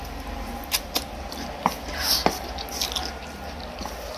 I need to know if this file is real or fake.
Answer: real